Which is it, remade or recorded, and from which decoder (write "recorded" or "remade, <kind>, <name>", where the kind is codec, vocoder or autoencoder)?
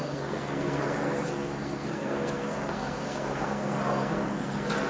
remade, codec, SNAC